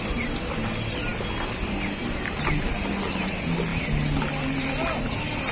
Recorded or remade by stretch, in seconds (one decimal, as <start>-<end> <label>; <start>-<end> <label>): 0.0-5.5 recorded